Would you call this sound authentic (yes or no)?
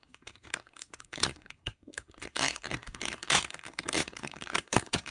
no